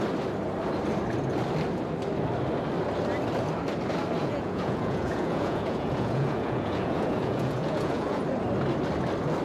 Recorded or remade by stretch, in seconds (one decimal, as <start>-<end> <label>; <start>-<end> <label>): 0.0-4.2 recorded; 4.2-8.2 remade; 8.2-9.4 recorded